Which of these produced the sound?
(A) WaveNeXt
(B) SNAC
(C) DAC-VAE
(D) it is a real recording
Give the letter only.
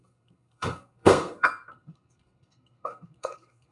B